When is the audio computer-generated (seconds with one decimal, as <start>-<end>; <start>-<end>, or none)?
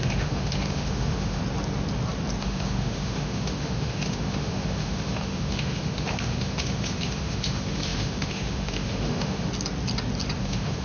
0.0-1.4; 2.4-9.5; 10.4-10.8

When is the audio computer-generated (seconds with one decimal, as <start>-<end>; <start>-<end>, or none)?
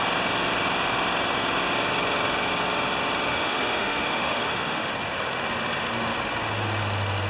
3.3-4.9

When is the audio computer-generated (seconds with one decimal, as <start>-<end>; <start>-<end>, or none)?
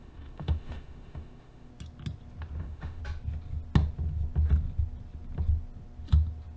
0.0-1.7; 2.6-3.0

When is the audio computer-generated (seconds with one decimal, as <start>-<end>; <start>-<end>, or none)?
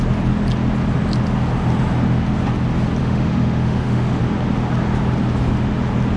3.0-4.2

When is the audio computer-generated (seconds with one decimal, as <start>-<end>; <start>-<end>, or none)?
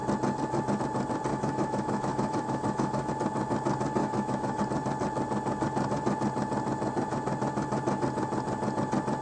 1.3-3.1; 4.0-4.6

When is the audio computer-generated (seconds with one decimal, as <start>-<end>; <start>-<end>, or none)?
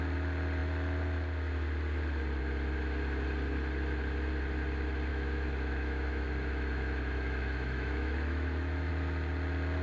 5.1-8.9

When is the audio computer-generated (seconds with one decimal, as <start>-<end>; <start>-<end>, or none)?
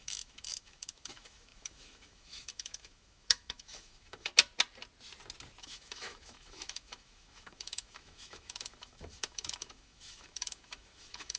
0.0-4.3; 5.6-11.4